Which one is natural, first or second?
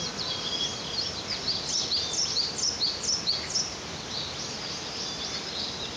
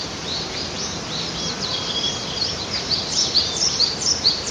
first